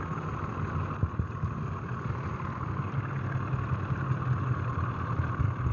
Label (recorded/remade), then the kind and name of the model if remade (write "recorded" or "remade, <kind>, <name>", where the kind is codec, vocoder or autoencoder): recorded